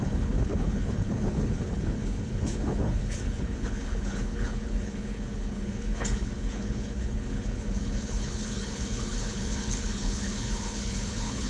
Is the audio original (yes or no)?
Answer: no